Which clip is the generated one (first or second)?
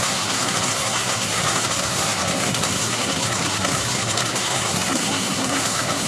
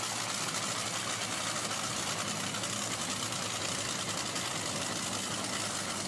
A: first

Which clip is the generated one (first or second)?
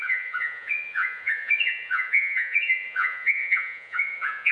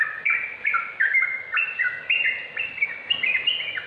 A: first